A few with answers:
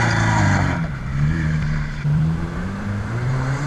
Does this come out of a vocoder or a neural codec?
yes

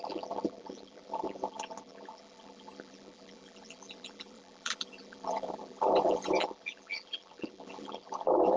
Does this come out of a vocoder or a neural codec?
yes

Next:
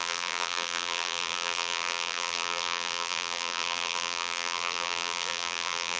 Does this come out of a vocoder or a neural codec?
yes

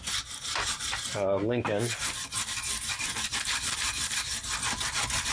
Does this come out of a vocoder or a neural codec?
yes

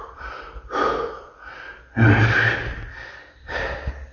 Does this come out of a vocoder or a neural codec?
no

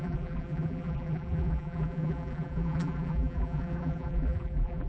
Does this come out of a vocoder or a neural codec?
yes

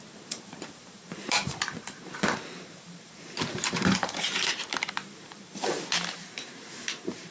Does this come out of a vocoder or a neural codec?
yes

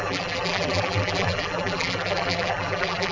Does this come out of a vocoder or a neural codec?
yes